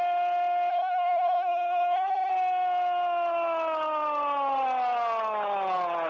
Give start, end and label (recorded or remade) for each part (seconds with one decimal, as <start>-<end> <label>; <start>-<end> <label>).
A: 0.0-0.7 recorded; 0.7-2.3 remade; 2.3-6.1 recorded